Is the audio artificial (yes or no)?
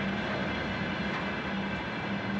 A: no